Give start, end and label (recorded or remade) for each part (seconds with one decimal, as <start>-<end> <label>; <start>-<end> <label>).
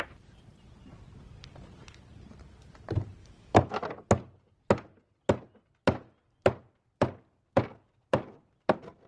0.0-3.2 recorded; 3.2-3.8 remade; 3.8-9.1 recorded